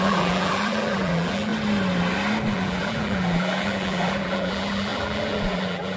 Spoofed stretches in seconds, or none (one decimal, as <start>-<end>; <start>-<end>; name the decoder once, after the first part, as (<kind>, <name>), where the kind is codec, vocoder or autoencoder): 0.0-1.5 (vocoder, BigVGAN v2); 2.5-6.0